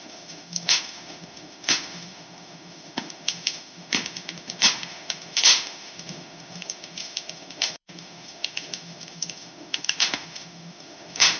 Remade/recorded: remade